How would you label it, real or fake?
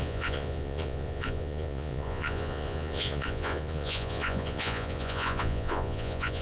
fake